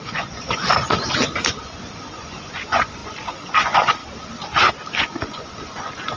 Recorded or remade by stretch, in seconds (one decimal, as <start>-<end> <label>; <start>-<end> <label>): 0.0-0.6 remade; 0.6-1.6 recorded; 1.6-4.0 remade; 4.0-4.9 recorded; 4.9-6.2 remade